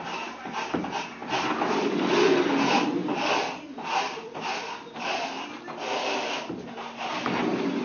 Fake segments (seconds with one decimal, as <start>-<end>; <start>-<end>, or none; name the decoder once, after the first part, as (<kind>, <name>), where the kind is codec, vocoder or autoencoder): none